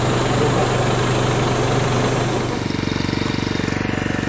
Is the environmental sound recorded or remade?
recorded